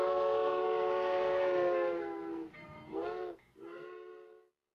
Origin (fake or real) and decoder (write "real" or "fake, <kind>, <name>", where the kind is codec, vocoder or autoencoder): fake, codec, SNAC